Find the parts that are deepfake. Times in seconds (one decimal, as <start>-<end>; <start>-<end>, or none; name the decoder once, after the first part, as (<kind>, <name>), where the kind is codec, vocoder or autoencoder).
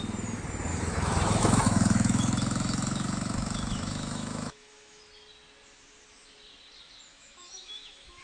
0.7-5.0 (autoencoder, DAC-VAE); 7.1-8.2